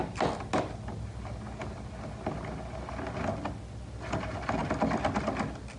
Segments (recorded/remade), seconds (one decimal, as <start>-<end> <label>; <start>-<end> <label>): 0.0-5.8 recorded